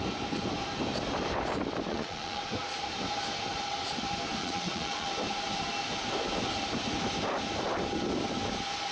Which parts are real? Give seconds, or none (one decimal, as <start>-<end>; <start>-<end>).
0.0-1.9; 2.4-4.4; 5.1-8.9